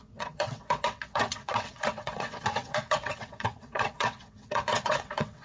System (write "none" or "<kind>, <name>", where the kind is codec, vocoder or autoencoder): vocoder, WaveNeXt